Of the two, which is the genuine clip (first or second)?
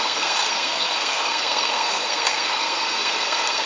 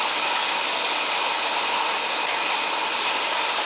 second